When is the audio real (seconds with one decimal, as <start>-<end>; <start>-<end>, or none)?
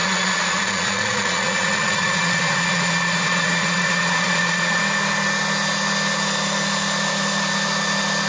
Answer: 4.8-8.3